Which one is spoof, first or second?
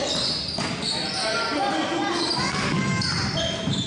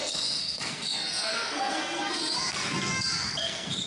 second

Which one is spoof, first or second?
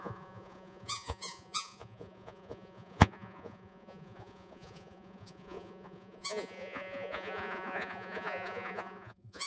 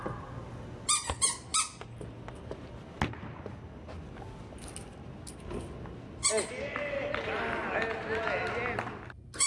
first